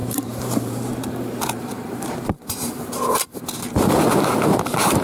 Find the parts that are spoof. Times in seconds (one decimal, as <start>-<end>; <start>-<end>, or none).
0.0-3.0